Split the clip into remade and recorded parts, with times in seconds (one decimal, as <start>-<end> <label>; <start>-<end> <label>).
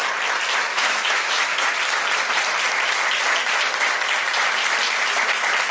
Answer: 0.0-0.7 recorded; 0.7-1.6 remade; 1.6-5.7 recorded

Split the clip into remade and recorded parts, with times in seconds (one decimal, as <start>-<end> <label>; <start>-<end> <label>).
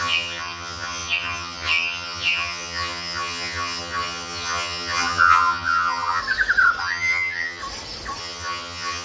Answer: 0.0-6.2 remade; 6.2-6.8 recorded; 6.8-7.6 remade; 7.6-8.2 recorded; 8.2-9.0 remade